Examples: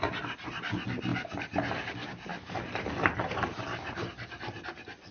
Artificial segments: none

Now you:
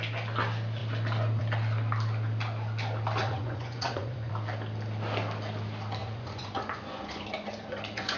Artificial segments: 3.2-4.3; 6.0-8.2

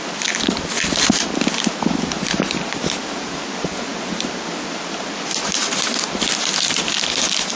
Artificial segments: none

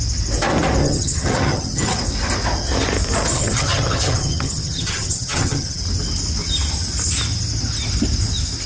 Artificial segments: 0.8-2.0; 3.3-5.8

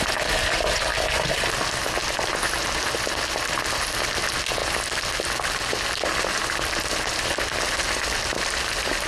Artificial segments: 2.0-2.6

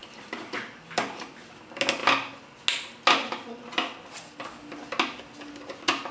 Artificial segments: 0.0-1.3

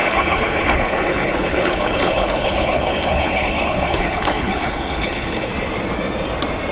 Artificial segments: 0.0-5.5

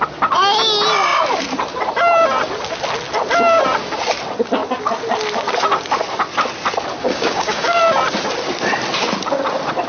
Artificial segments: 7.0-7.8